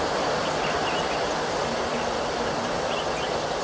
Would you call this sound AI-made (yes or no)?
no